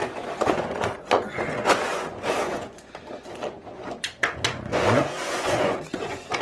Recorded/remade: remade